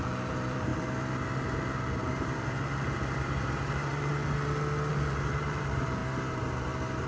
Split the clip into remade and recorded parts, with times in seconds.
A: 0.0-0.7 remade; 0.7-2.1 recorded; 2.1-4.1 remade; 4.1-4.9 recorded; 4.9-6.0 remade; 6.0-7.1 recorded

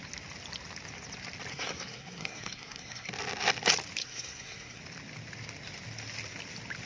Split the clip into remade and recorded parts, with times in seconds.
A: 0.0-1.5 recorded; 1.5-3.1 remade; 3.1-4.0 recorded; 4.0-4.8 remade; 4.8-6.9 recorded

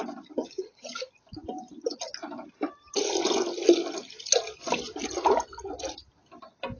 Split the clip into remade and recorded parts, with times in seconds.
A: 0.0-0.4 recorded; 0.4-0.9 remade; 0.9-6.8 recorded

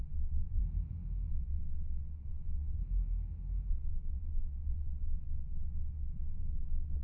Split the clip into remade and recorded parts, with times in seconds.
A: 0.0-0.6 remade; 0.6-1.3 recorded; 1.3-2.8 remade; 2.8-3.7 recorded; 3.7-7.0 remade